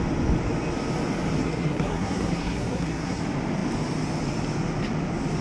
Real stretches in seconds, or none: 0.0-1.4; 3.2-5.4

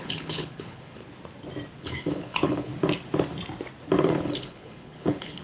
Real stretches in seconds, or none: 1.0-1.8; 2.7-4.0

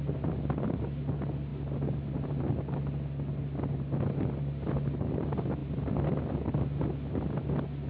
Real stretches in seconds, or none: 0.0-7.9

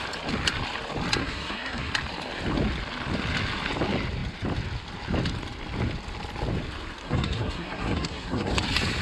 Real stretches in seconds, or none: 0.0-1.2; 1.9-7.0; 8.5-9.0

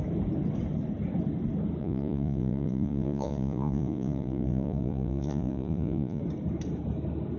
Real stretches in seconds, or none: 0.0-1.8; 6.2-7.4

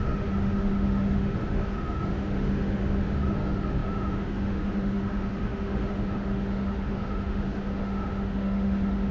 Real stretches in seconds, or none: none

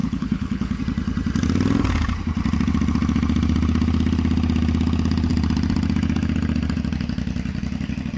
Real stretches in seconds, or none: 0.8-8.2

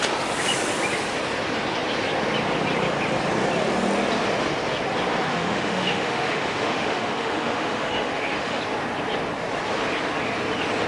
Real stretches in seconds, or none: 0.0-5.3; 8.6-10.9